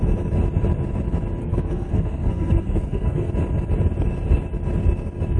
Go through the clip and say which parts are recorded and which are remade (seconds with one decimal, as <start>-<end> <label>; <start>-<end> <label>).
0.0-1.4 recorded; 1.4-3.3 remade; 3.3-5.4 recorded